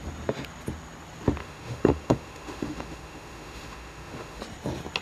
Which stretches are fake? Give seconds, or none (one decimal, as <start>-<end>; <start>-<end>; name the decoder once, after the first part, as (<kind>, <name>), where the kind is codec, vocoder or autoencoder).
1.4-4.4 (autoencoder, DAC-VAE)